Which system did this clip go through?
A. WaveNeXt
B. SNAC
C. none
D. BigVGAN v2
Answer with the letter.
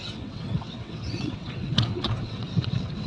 A